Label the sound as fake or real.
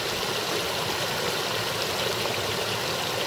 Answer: real